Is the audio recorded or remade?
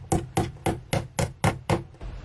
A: recorded